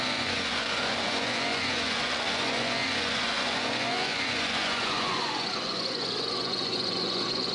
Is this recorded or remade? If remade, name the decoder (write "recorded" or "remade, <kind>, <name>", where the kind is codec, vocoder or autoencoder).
remade, vocoder, Vocos